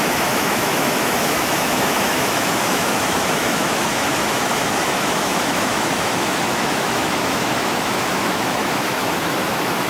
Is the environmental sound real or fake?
fake